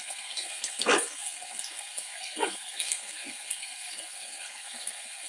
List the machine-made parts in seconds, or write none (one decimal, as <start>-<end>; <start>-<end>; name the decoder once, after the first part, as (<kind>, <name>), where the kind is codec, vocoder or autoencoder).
0.0-5.3 (codec, SNAC)

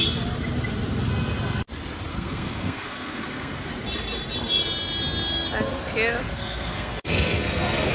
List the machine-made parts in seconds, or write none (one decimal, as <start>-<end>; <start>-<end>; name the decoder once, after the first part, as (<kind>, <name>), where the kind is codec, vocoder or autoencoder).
2.1-3.7 (codec, SNAC); 6.2-7.9

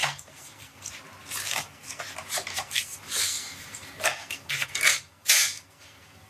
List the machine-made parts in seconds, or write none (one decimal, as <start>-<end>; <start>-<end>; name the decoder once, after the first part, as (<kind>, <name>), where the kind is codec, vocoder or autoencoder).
0.0-0.9 (codec, SNAC); 1.4-2.0; 2.5-6.3